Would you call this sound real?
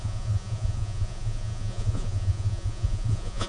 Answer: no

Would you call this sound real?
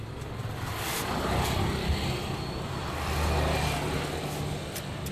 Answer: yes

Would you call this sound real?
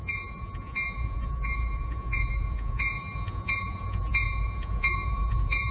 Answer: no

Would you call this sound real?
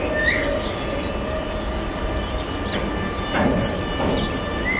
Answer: yes